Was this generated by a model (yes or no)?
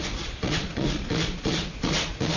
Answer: yes